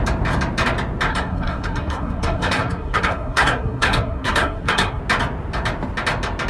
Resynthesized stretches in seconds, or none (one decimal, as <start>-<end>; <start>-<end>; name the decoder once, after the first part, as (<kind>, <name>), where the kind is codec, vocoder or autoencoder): 1.1-5.0 (codec, SNAC)